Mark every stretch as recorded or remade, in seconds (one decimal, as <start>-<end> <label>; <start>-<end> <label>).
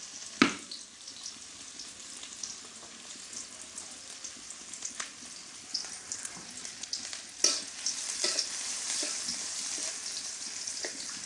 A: 0.0-6.7 remade; 6.7-8.3 recorded; 8.3-9.3 remade; 9.3-9.9 recorded; 9.9-11.3 remade